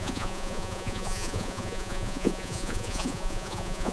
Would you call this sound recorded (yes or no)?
no